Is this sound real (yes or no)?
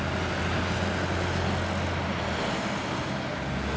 yes